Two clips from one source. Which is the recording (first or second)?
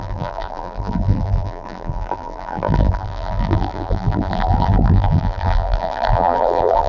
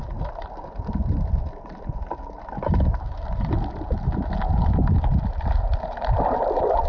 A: second